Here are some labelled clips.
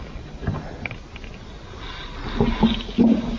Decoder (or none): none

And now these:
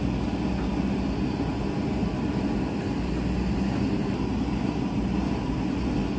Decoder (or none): none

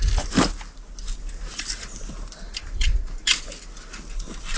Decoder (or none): none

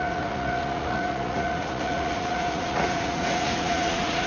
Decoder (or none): vocoder, Vocos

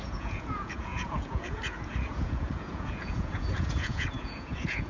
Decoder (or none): vocoder, Vocos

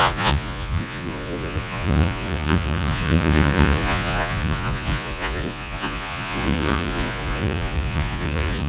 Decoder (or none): vocoder, Vocos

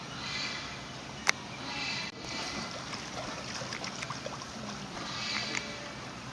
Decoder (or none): none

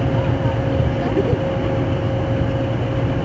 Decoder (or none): none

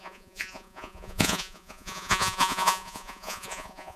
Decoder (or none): vocoder, Vocos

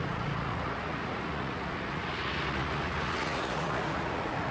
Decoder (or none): vocoder, Vocos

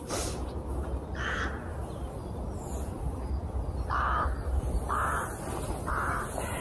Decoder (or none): none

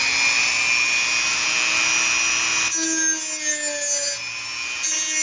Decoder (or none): none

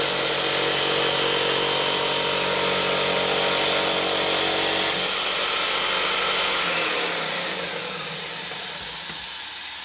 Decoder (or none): none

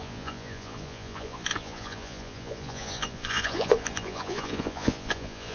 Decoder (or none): vocoder, Vocos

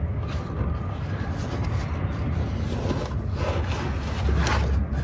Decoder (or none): none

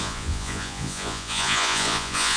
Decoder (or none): vocoder, Vocos